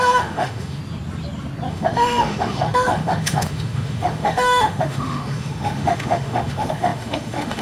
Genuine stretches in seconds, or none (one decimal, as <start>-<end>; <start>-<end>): 0.8-1.7